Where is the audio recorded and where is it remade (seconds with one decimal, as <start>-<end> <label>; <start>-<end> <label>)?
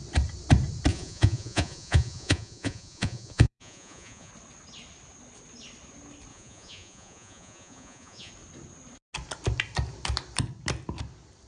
0.0-0.9 recorded; 0.9-4.3 remade; 4.3-6.3 recorded; 6.3-8.3 remade; 8.3-11.5 recorded